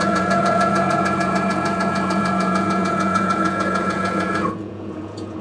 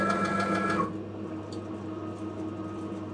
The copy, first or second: first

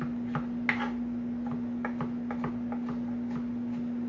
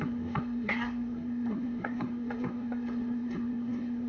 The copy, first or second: second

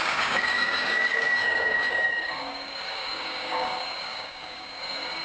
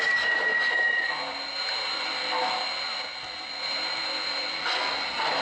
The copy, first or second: first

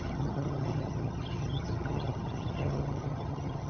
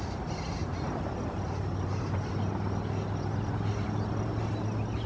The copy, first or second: first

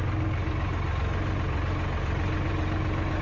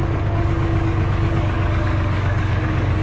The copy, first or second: second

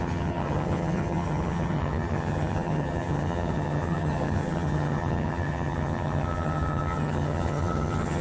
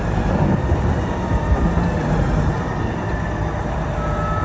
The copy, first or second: first